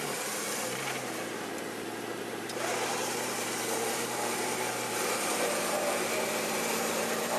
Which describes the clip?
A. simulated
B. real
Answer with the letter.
A